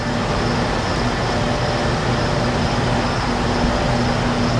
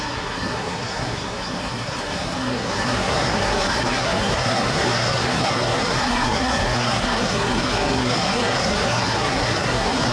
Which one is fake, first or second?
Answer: second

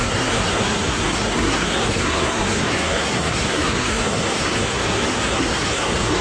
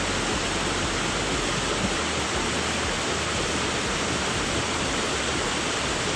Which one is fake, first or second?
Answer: first